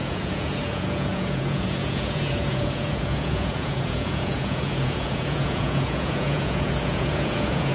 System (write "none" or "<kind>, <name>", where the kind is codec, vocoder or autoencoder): vocoder, Vocos